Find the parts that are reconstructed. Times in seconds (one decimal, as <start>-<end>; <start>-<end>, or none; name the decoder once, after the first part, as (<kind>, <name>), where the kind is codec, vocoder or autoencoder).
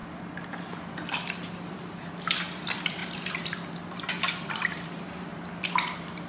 1.7-6.3 (vocoder, BigVGAN v2)